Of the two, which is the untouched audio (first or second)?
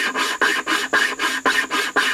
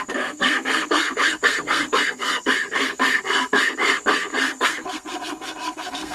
first